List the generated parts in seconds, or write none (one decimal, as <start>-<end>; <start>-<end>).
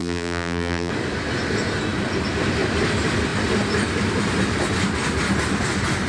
0.0-0.9